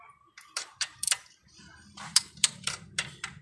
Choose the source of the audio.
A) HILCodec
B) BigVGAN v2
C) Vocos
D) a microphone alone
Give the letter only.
B